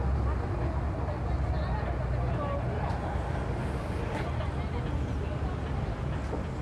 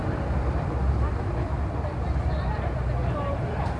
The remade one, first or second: second